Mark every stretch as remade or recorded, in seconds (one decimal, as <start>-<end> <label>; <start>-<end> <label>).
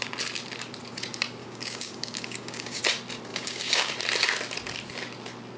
0.0-1.4 recorded; 1.4-2.8 remade; 2.8-3.3 recorded; 3.3-3.9 remade; 3.9-5.6 recorded